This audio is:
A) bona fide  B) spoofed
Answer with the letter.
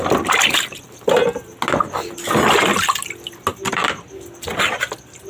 A